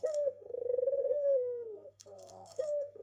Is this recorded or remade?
remade